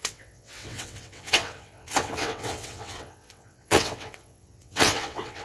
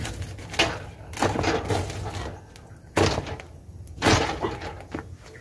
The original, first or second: second